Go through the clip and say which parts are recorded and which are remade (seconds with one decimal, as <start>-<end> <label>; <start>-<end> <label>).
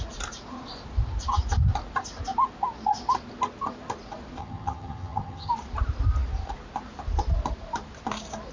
0.0-4.4 recorded; 4.4-5.5 remade; 5.5-8.5 recorded